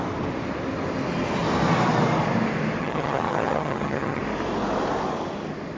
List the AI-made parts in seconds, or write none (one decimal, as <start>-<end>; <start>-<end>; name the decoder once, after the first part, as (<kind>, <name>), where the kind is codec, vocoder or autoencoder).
2.8-4.2 (vocoder, HiFi-GAN)